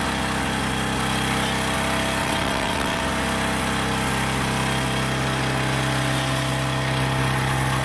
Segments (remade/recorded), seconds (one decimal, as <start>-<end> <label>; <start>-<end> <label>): 0.0-2.2 recorded; 2.2-3.0 remade; 3.0-7.8 recorded